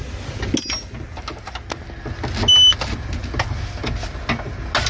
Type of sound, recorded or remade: recorded